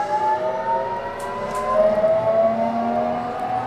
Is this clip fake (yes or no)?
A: no